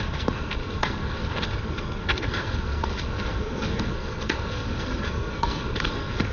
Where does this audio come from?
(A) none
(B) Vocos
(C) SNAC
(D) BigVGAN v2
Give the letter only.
C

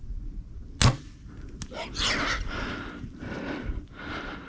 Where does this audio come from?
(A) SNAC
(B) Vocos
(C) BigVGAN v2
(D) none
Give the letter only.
D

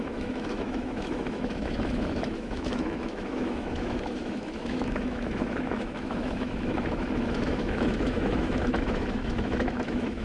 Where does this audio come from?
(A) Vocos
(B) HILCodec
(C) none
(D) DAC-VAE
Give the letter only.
D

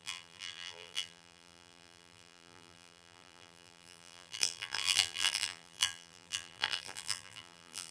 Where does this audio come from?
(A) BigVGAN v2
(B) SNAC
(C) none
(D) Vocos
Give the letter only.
A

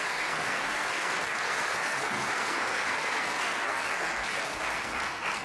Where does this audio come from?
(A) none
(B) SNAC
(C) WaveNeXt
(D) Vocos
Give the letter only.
B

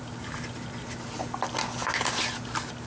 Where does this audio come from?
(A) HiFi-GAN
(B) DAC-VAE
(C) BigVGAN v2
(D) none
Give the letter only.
D